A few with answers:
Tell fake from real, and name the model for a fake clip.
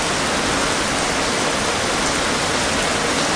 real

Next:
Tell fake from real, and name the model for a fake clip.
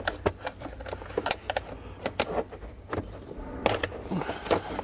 real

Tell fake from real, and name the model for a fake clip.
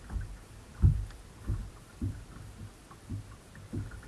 real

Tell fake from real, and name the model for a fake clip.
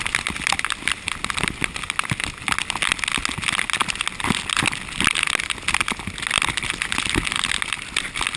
real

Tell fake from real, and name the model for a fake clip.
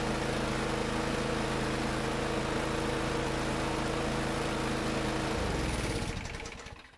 real